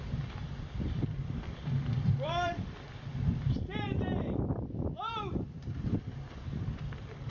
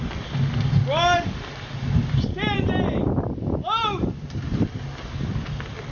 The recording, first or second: second